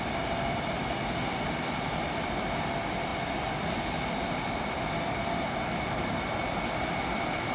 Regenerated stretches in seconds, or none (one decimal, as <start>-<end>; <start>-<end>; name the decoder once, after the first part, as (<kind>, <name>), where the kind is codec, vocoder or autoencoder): none